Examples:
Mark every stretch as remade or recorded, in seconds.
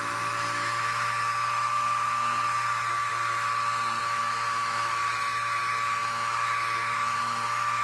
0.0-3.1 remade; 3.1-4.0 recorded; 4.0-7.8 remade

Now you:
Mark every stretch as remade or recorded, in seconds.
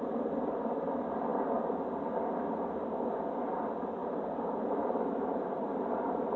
0.0-4.0 recorded; 4.0-5.0 remade; 5.0-6.4 recorded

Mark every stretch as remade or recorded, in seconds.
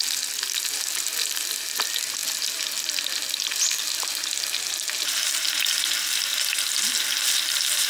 0.0-7.9 recorded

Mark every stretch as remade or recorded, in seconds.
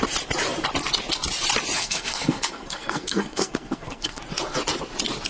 0.0-1.8 recorded; 1.8-4.2 remade; 4.2-5.3 recorded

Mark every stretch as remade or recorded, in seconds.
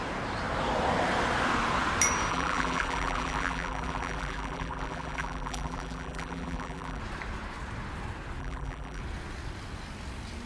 0.0-2.3 recorded; 2.3-7.0 remade; 7.0-8.4 recorded; 8.4-9.0 remade; 9.0-10.5 recorded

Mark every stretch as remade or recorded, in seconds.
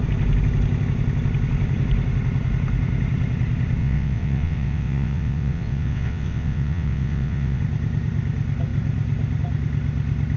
0.0-3.8 recorded; 3.8-7.6 remade; 7.6-10.4 recorded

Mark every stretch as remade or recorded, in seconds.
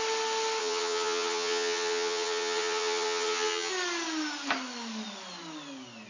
0.0-0.6 recorded; 0.6-3.7 remade; 3.7-6.1 recorded